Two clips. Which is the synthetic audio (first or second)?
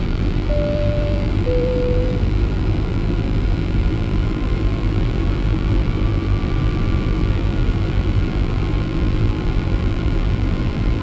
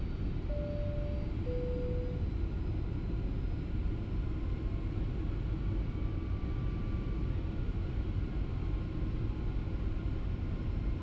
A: first